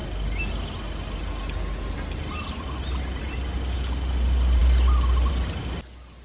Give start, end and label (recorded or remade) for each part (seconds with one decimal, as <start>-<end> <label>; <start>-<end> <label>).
0.0-6.2 recorded